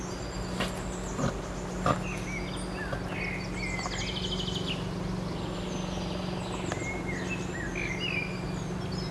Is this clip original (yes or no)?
yes